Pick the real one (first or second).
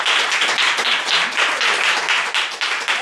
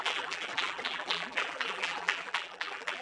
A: first